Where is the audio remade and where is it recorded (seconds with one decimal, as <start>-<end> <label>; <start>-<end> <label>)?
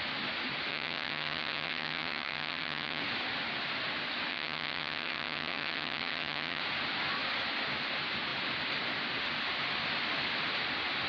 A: 0.0-0.7 recorded; 0.7-3.0 remade; 3.0-4.3 recorded; 4.3-6.6 remade; 6.6-11.1 recorded